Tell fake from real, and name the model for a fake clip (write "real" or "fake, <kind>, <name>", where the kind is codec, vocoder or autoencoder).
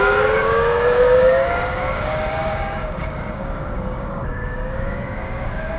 fake, codec, DAC